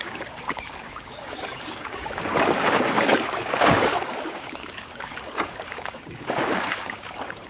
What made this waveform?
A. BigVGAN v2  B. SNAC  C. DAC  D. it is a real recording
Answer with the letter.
C